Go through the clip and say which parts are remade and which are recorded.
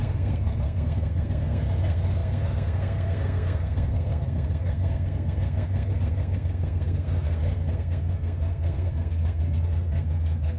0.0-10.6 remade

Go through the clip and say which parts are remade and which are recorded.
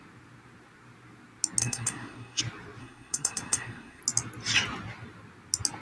0.0-1.6 recorded; 1.6-2.4 remade; 2.4-2.8 recorded; 2.8-4.0 remade; 4.0-5.8 recorded